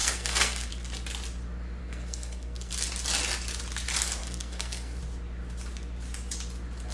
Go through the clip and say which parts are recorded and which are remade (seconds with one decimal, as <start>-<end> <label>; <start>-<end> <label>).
0.0-0.7 remade; 0.7-1.8 recorded; 1.8-2.7 remade; 2.7-4.2 recorded; 4.2-5.0 remade; 5.0-6.9 recorded